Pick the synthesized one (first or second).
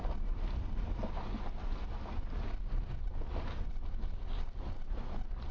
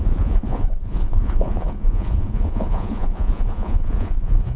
second